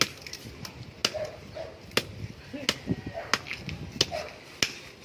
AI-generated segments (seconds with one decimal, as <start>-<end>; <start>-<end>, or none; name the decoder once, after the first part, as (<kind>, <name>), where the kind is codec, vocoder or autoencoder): none